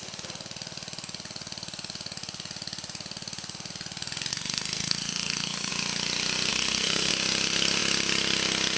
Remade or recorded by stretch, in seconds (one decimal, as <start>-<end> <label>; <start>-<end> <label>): 0.0-4.3 recorded; 4.3-5.7 remade; 5.7-6.5 recorded; 6.5-7.1 remade; 7.1-8.8 recorded